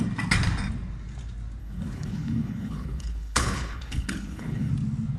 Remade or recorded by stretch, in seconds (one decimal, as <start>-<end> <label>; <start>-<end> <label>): 0.0-1.6 recorded; 1.6-4.7 remade; 4.7-5.2 recorded